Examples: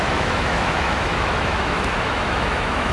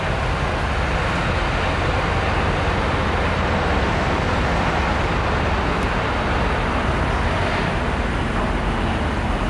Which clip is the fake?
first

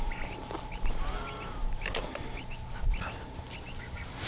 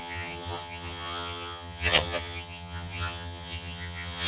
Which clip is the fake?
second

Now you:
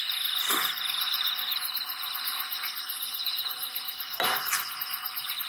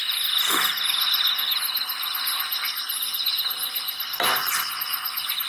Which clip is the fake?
first